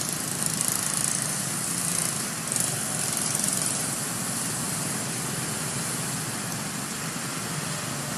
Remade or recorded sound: remade